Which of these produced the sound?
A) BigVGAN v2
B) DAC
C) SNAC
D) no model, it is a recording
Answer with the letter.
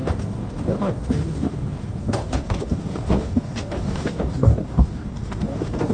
B